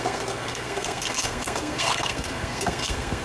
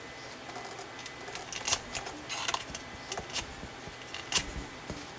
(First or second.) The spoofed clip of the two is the first